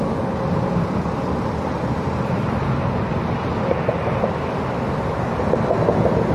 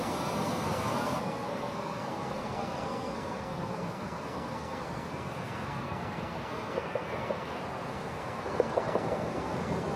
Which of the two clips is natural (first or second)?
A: first